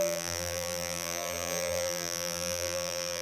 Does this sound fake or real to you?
fake